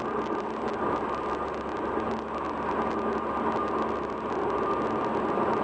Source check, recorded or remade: recorded